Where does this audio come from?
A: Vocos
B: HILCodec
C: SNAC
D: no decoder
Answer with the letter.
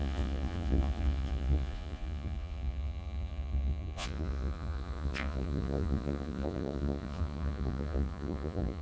A